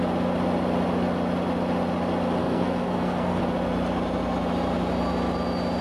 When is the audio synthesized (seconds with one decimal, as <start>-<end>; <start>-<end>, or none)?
2.4-3.4